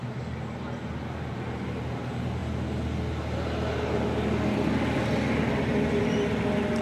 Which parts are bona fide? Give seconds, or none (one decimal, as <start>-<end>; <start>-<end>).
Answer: 0.0-6.8